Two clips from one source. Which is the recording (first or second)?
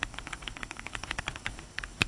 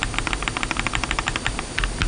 second